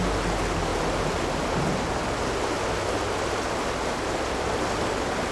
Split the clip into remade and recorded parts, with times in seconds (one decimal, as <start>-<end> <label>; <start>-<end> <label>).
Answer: 0.0-5.3 recorded